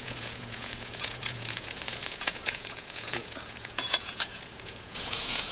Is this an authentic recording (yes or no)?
no